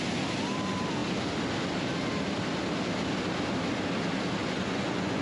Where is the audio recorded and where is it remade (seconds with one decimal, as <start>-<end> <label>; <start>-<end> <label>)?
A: 0.0-4.4 recorded; 4.4-5.2 remade